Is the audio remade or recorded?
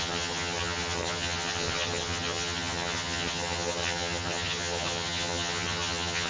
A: remade